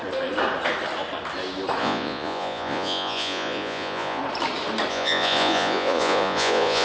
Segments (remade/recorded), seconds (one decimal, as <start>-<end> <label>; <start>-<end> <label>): 0.0-1.8 recorded; 1.8-4.2 remade; 4.2-4.9 recorded; 4.9-6.8 remade